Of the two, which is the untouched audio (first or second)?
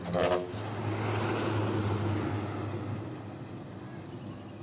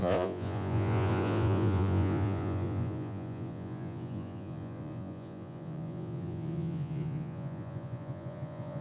first